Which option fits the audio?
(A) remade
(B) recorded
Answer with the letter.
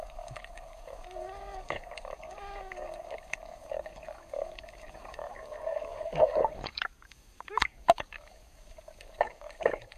A